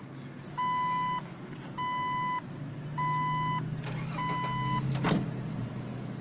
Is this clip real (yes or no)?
yes